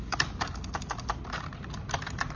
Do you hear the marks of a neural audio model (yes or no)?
no